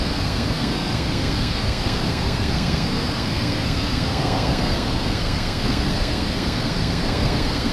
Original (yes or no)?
no